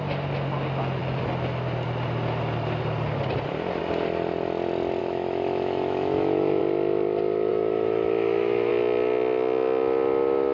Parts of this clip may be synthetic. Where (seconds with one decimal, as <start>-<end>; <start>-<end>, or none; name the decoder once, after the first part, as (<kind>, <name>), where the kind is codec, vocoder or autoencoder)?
5.0-6.6 (autoencoder, DAC-VAE); 7.5-8.7